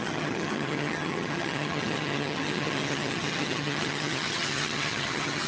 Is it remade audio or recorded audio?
remade